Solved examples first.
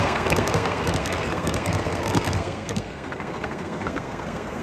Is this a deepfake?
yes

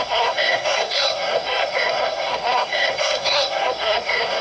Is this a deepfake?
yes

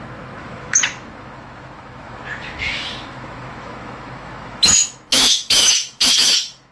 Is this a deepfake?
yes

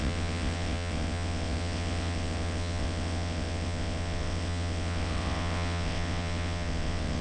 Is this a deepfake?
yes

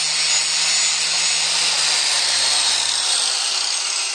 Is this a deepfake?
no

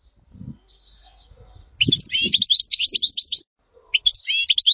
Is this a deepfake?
no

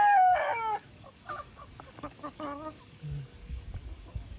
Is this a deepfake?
yes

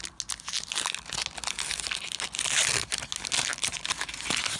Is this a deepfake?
no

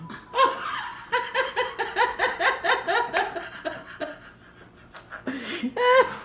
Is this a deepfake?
no